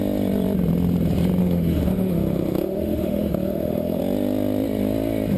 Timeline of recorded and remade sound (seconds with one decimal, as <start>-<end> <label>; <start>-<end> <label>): 0.0-1.4 recorded; 1.4-4.0 remade; 4.0-5.4 recorded